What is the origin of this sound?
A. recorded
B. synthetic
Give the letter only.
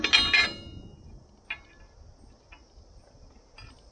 A